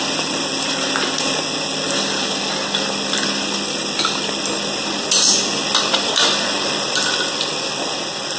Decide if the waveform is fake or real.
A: real